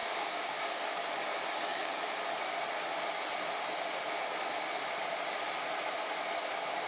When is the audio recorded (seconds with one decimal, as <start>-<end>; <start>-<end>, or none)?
1.0-1.7; 2.3-6.9